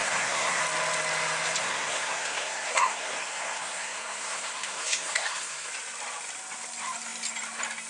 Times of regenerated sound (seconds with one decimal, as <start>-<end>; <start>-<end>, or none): 0.0-0.6; 1.6-5.7